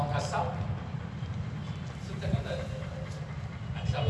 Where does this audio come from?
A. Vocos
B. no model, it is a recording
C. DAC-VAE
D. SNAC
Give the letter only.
B